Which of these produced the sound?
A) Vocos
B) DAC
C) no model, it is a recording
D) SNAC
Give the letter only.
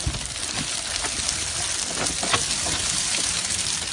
C